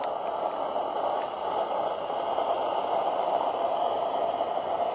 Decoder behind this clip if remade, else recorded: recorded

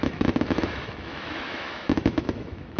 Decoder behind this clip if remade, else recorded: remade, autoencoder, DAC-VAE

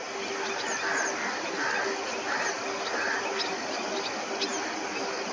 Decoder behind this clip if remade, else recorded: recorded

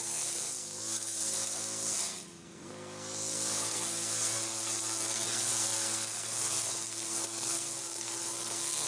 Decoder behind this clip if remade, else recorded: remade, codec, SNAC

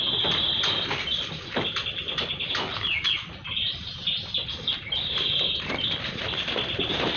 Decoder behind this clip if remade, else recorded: recorded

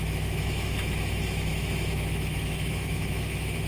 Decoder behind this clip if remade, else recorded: remade, autoencoder, DAC-VAE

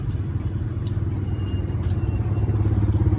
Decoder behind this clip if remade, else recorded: recorded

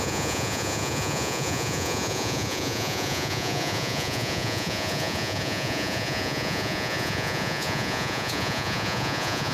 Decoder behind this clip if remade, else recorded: remade, vocoder, Vocos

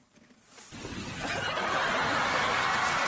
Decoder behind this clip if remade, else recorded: recorded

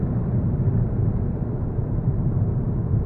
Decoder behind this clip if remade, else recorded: remade, vocoder, BigVGAN v2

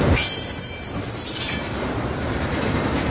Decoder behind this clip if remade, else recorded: recorded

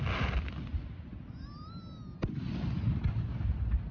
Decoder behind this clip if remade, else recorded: remade, vocoder, BigVGAN v2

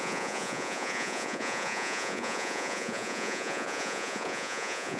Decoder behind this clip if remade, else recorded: remade, vocoder, Vocos